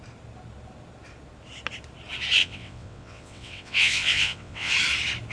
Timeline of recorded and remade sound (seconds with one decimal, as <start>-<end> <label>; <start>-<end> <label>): 0.0-2.4 recorded; 2.4-4.7 remade; 4.7-5.3 recorded